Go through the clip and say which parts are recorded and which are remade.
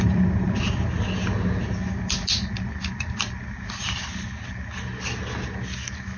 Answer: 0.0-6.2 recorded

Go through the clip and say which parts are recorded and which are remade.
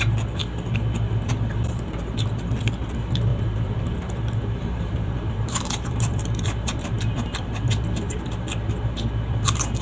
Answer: 0.0-3.3 recorded; 3.3-8.3 remade; 8.3-9.8 recorded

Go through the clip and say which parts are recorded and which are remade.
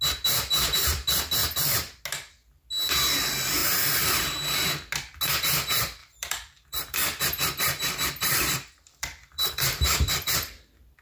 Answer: 0.0-1.4 recorded; 1.4-2.0 remade; 2.0-3.6 recorded; 3.6-4.4 remade; 4.4-6.0 recorded; 6.0-11.0 remade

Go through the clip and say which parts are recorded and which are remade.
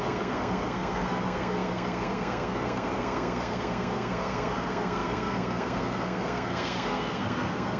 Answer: 0.0-7.8 remade